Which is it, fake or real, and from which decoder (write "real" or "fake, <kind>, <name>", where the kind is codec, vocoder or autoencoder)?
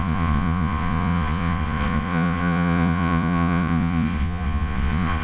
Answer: fake, vocoder, Vocos